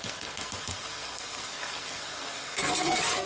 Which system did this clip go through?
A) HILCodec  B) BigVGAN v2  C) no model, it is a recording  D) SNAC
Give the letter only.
D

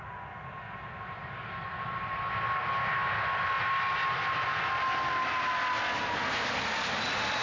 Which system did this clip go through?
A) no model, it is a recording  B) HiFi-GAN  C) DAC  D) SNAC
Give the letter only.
A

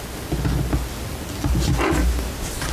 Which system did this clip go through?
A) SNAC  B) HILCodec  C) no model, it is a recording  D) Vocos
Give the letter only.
C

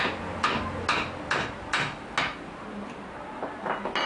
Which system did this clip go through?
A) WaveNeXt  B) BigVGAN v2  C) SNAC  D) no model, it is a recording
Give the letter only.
D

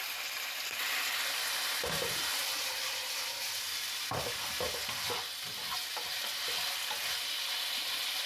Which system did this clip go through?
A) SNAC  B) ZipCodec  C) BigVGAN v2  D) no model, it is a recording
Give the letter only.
D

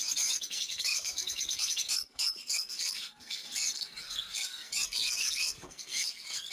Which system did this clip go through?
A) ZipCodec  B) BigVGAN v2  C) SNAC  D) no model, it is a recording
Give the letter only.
C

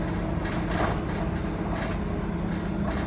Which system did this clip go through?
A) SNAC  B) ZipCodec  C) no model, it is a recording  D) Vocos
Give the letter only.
C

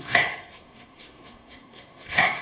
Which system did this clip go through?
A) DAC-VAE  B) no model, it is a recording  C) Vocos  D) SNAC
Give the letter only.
D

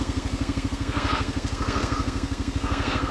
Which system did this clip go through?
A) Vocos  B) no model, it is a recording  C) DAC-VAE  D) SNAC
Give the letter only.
D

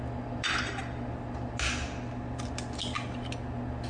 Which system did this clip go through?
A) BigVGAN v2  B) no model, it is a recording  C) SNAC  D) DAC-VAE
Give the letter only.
B